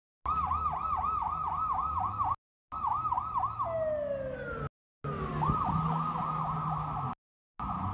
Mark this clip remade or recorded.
recorded